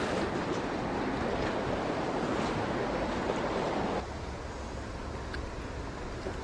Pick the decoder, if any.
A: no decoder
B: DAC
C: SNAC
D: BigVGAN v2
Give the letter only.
A